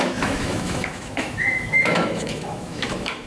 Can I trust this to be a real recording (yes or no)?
no